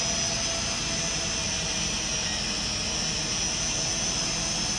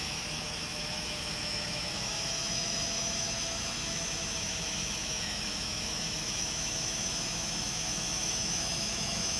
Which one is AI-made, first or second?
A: second